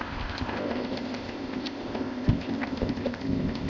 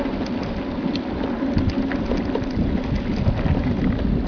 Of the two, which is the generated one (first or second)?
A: first